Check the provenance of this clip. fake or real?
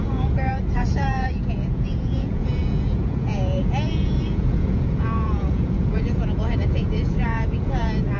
fake